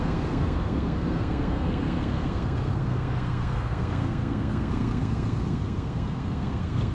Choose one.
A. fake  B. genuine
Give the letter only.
A